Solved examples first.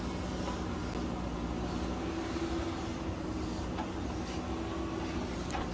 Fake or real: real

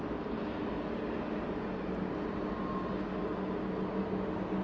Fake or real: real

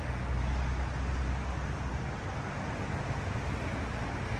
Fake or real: real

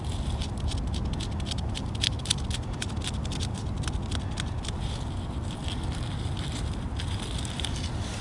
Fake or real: real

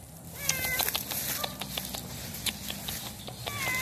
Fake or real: real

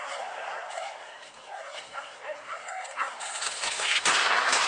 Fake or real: fake